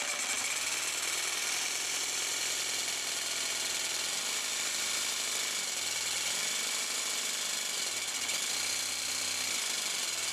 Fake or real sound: real